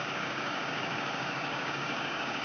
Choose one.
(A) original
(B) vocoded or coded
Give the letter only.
B